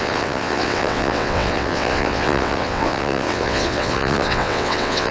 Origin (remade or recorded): remade